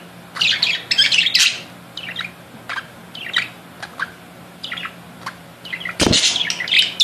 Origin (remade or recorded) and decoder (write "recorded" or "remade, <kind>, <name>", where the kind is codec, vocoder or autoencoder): recorded